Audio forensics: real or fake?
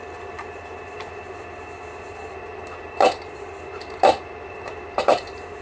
fake